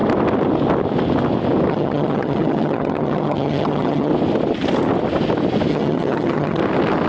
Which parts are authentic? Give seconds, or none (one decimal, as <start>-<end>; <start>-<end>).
0.0-1.7; 4.1-5.7; 6.6-7.1